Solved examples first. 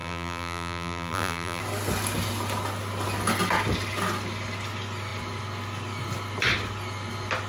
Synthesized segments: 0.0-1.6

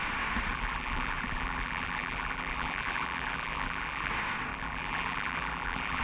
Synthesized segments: 0.5-4.1; 4.5-6.0

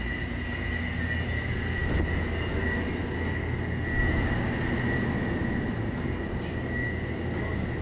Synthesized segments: none

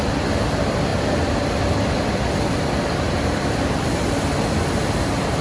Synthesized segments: 0.9-4.1

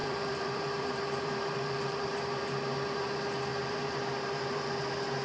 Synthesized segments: 0.0-2.4; 3.5-4.7

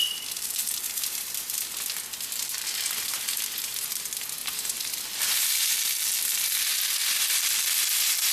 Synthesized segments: 0.0-6.7; 7.3-8.3

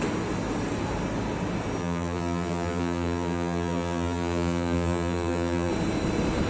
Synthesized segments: 1.8-5.7

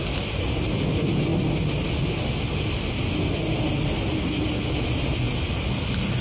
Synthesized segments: none